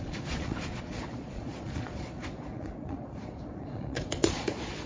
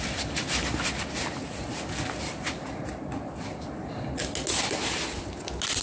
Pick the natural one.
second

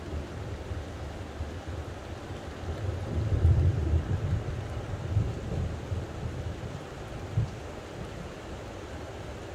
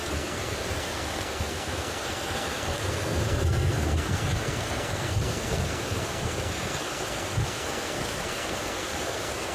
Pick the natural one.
first